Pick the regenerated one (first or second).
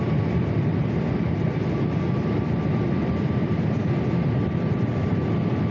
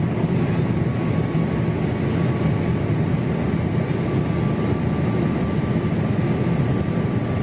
first